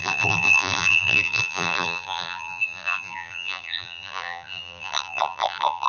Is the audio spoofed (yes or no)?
yes